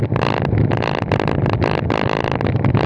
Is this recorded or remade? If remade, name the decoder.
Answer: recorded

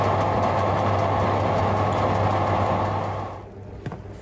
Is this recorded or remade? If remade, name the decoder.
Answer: recorded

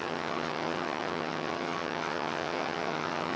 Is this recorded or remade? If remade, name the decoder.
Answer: remade, vocoder, HiFi-GAN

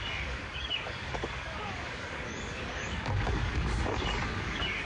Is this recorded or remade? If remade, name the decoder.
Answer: remade, codec, DAC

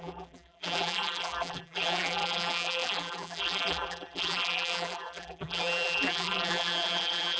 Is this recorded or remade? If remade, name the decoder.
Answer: remade, vocoder, BigVGAN v2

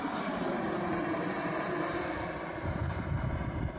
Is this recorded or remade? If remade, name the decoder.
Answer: remade, vocoder, BigVGAN v2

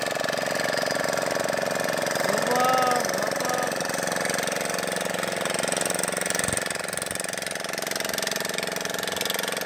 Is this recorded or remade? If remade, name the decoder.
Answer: recorded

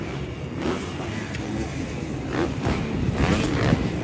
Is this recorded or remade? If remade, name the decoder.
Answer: remade, vocoder, BigVGAN v2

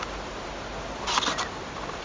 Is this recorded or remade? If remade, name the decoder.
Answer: recorded